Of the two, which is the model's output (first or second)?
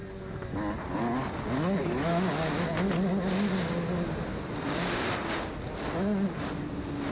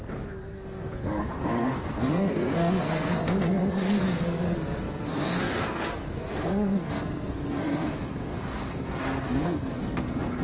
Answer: second